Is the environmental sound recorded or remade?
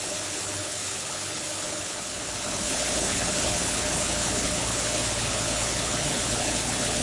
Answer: remade